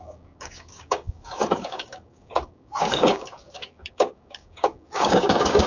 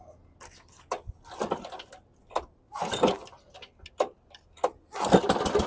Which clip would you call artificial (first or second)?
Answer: first